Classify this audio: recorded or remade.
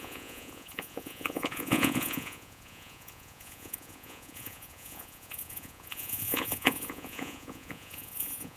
remade